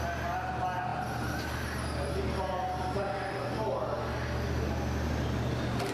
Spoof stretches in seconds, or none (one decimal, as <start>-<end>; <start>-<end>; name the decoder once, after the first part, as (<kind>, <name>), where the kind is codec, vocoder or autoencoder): none